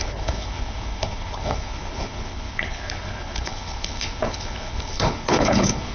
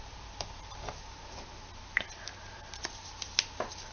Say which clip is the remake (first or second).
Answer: first